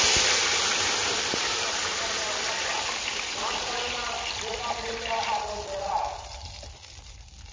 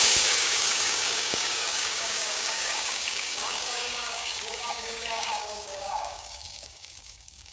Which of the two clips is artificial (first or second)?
second